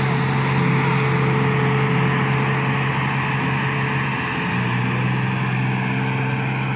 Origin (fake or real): real